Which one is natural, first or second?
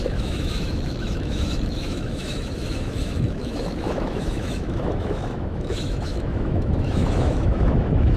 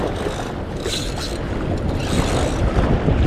second